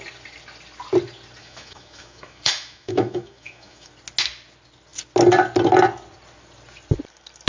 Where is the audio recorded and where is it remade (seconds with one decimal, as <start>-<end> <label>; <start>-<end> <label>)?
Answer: 0.0-1.4 recorded; 1.4-3.9 remade; 3.9-7.5 recorded